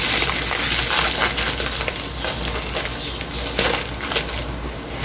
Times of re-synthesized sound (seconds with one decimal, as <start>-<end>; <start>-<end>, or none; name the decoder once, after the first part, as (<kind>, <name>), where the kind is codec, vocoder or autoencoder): none